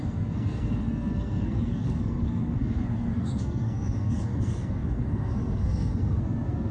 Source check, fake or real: fake